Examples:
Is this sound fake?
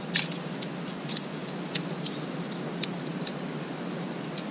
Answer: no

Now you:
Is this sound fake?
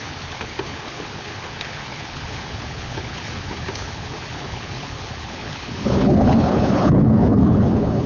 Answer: yes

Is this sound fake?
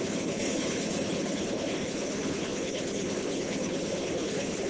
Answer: yes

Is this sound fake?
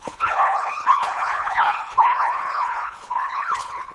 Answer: yes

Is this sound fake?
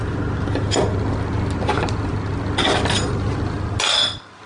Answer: no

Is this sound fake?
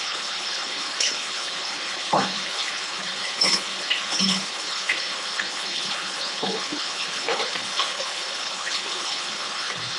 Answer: yes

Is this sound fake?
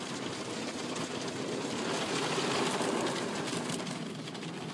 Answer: no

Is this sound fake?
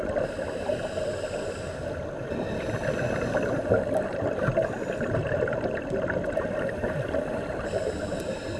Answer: no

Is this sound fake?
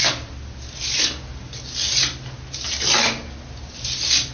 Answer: no